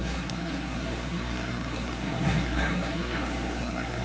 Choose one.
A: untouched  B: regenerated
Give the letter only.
B